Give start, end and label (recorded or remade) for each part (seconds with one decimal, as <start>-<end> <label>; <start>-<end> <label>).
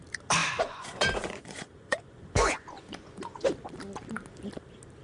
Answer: 0.0-0.4 recorded; 0.4-3.4 remade; 3.4-5.0 recorded